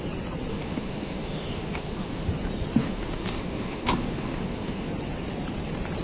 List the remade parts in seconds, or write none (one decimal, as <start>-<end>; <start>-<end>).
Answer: 0.5-2.3; 2.8-4.9

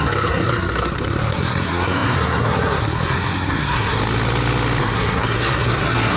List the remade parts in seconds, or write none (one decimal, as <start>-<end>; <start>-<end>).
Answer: 0.0-4.0; 4.8-6.2

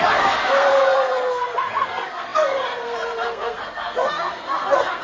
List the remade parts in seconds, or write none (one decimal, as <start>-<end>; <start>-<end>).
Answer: 0.0-5.0

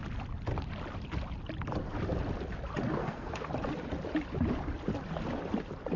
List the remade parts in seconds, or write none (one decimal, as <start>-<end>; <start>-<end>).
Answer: 3.0-3.5